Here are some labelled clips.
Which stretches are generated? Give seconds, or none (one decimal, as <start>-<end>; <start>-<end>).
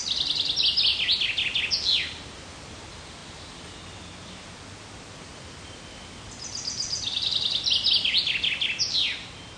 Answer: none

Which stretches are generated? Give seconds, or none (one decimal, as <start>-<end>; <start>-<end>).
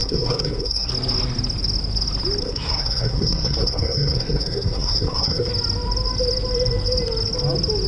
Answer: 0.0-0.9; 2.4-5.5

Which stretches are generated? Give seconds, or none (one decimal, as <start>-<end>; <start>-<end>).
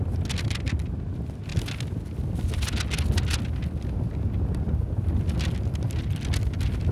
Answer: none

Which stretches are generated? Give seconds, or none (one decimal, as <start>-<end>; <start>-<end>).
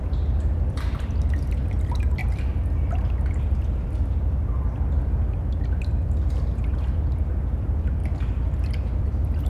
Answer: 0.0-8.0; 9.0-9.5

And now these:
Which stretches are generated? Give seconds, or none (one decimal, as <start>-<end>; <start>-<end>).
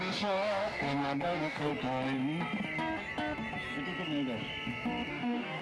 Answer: 0.0-1.7; 5.1-5.6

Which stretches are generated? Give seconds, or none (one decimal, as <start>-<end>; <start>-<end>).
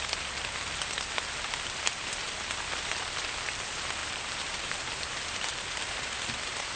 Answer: 4.0-6.8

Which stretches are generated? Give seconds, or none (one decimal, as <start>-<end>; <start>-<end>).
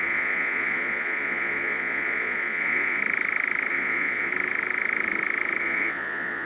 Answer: 0.0-3.0; 3.7-4.3; 5.6-6.5